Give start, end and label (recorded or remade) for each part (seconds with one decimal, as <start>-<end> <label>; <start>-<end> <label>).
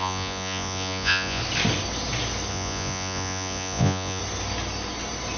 0.0-1.4 remade; 1.4-2.5 recorded; 2.5-4.2 remade; 4.2-5.4 recorded